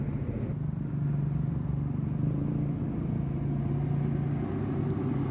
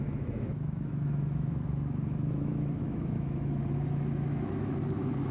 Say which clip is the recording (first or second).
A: first